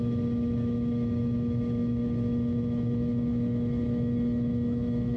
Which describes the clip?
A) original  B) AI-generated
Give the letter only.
B